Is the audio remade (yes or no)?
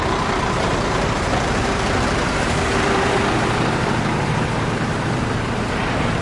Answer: yes